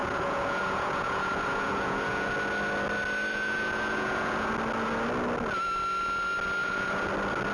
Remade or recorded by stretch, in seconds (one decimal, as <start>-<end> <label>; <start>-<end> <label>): 0.0-2.3 remade; 2.3-3.3 recorded; 3.3-4.5 remade; 4.5-6.6 recorded; 6.6-7.1 remade; 7.1-7.5 recorded